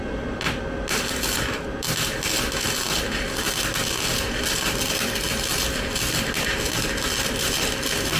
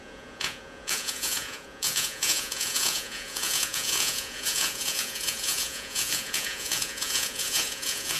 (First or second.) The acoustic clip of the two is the first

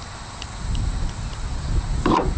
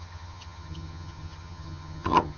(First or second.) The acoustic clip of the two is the first